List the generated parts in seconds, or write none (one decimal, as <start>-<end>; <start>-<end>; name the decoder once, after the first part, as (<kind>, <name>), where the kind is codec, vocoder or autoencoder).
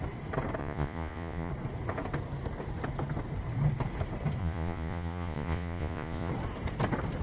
0.6-1.5 (vocoder, Vocos); 4.4-6.3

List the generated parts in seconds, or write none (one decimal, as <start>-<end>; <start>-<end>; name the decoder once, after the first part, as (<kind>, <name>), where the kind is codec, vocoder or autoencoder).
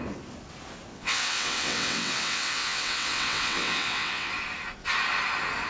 0.9-4.3 (vocoder, WaveNeXt)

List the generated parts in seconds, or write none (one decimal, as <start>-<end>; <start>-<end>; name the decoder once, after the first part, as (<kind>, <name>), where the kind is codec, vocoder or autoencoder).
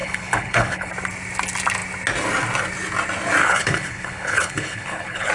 0.0-0.9 (codec, HILCodec); 3.4-5.3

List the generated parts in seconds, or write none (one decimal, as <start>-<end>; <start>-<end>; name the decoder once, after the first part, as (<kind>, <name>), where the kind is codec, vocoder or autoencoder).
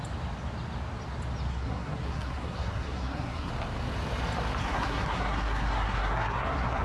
1.5-3.5 (codec, SNAC); 4.6-6.8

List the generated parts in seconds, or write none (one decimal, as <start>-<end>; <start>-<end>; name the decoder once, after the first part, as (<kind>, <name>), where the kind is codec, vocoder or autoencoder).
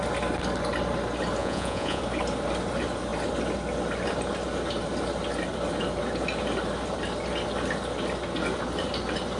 1.4-2.0 (vocoder, Vocos)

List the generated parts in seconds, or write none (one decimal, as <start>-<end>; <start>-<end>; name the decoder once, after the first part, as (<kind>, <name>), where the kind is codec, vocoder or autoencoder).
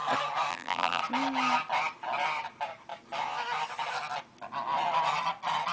0.5-1.0 (vocoder, BigVGAN v2)